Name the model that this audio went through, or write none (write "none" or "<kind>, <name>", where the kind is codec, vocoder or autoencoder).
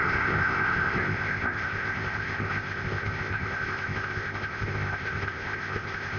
codec, ZipCodec